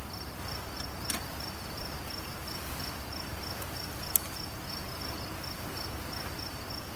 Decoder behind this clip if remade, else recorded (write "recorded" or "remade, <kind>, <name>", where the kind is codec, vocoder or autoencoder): recorded